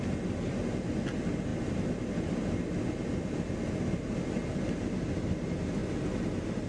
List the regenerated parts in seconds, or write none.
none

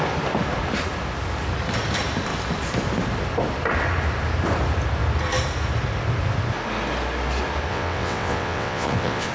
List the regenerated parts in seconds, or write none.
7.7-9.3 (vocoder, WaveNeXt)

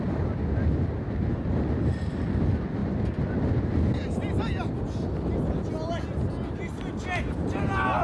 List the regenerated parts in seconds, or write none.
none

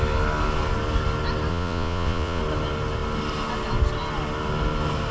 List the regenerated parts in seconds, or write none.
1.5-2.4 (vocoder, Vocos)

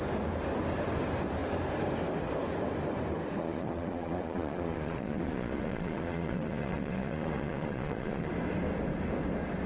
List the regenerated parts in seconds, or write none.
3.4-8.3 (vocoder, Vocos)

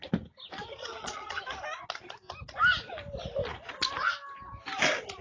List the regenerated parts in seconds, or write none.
0.8-1.4 (vocoder, HiFi-GAN)

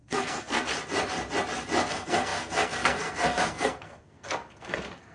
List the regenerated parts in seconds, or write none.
0.0-0.7 (codec, SNAC); 1.9-5.1

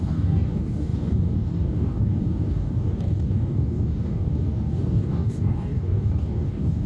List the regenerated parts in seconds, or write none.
0.0-6.9 (codec, DAC)